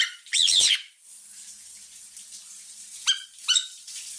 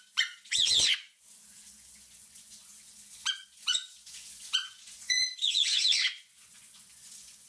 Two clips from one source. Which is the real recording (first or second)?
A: first